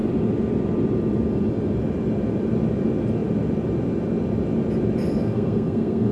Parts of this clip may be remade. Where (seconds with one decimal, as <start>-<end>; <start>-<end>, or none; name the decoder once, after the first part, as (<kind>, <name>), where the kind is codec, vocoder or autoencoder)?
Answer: 5.2-6.1 (codec, SNAC)